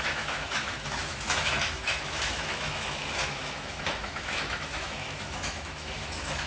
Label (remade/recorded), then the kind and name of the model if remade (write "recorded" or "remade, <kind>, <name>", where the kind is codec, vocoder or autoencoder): remade, autoencoder, DAC-VAE